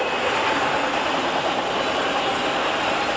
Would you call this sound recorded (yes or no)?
yes